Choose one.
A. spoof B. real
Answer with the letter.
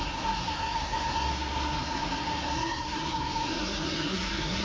A